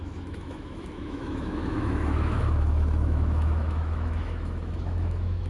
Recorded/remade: remade